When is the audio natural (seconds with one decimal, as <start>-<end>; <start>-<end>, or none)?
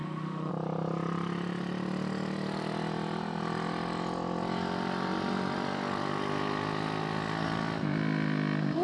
0.5-8.8